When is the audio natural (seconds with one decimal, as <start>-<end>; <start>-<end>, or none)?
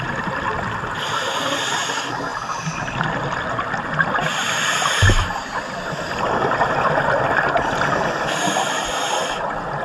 0.0-9.8